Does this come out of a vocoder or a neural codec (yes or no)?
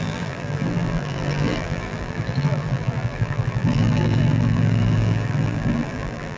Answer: yes